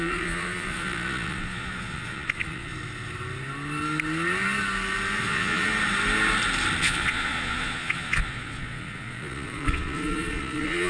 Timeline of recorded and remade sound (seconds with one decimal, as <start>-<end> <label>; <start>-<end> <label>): 0.0-2.7 remade; 2.7-5.2 recorded; 5.2-5.7 remade; 5.7-6.8 recorded; 6.8-10.9 remade

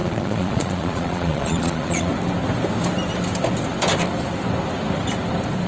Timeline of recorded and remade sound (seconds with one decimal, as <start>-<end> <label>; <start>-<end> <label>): 0.0-2.1 remade; 2.1-5.7 recorded

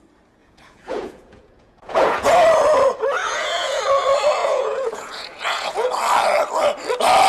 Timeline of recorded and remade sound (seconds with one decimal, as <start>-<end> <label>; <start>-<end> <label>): 0.0-0.4 recorded; 0.4-2.3 remade; 2.3-3.2 recorded; 3.2-3.8 remade; 3.8-4.4 recorded; 4.4-5.9 remade; 5.9-7.3 recorded

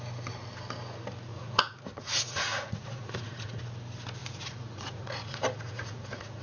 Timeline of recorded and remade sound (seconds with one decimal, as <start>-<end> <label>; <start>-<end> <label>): 0.0-1.3 recorded; 1.3-3.6 remade; 3.6-4.2 recorded; 4.2-6.4 remade

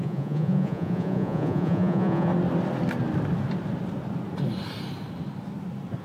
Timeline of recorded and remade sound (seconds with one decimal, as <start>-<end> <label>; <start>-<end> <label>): 0.0-2.3 remade; 2.3-6.0 recorded

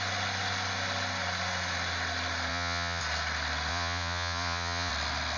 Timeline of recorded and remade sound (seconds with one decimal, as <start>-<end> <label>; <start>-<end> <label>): 0.0-2.5 recorded; 2.5-3.0 remade; 3.0-3.7 recorded; 3.7-4.9 remade; 4.9-5.4 recorded

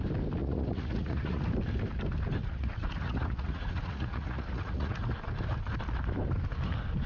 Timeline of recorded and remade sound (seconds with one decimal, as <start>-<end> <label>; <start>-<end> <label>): 0.0-0.4 recorded; 0.4-1.4 remade; 1.4-2.4 recorded; 2.4-5.0 remade; 5.0-7.1 recorded